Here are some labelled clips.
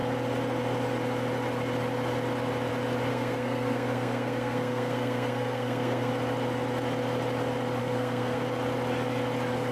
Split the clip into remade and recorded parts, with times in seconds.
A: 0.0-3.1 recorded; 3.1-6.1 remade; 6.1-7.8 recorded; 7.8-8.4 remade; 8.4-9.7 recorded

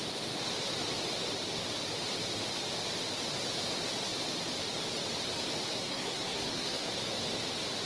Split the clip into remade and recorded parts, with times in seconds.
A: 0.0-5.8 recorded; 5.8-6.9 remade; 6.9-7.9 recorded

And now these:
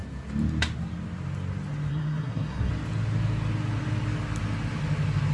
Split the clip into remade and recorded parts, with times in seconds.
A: 0.0-1.9 recorded; 1.9-2.7 remade; 2.7-5.3 recorded